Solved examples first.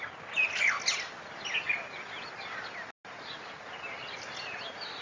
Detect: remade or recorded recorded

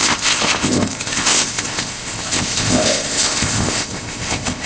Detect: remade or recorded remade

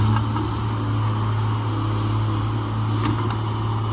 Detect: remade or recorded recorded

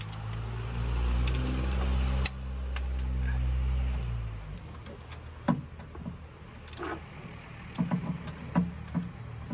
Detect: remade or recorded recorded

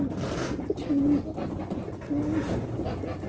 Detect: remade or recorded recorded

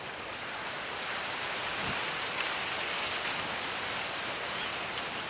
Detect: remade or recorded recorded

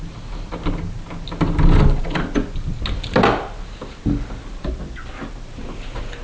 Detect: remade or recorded recorded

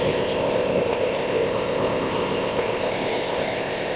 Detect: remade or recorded remade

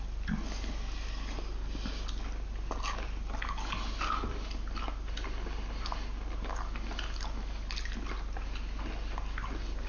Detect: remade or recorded recorded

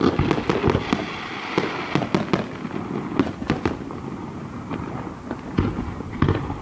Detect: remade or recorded recorded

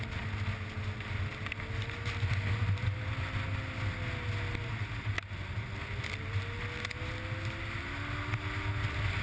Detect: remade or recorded recorded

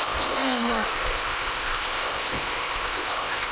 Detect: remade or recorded remade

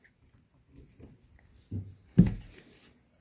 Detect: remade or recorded recorded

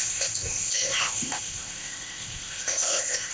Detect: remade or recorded remade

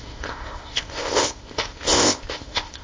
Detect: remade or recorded remade